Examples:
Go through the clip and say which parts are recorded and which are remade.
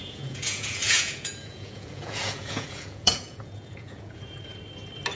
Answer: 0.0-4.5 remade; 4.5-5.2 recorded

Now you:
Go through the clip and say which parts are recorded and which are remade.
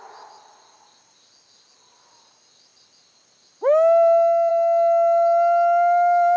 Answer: 0.0-6.4 recorded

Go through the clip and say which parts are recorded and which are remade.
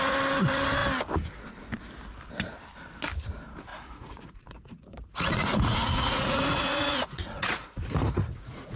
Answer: 0.0-3.7 recorded; 3.7-8.8 remade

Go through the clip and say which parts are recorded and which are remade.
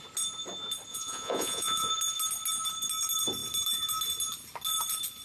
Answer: 0.0-0.9 recorded; 0.9-1.9 remade; 1.9-5.2 recorded